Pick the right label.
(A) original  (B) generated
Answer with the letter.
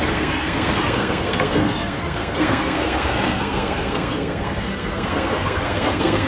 B